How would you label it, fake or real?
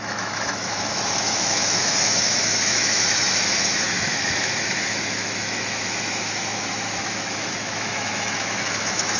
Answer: fake